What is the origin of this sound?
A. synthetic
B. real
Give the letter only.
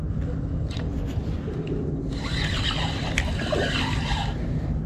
B